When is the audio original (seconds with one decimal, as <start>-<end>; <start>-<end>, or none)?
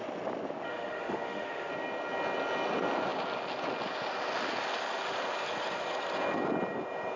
0.0-0.7; 1.7-7.2